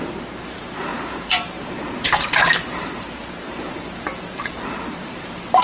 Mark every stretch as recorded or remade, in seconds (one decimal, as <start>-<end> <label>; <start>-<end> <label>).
0.0-5.6 remade